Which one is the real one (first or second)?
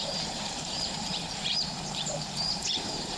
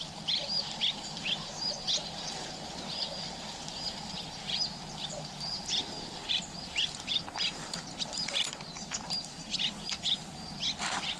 second